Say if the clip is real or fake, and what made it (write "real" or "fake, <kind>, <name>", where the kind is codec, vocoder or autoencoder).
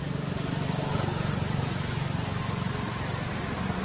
real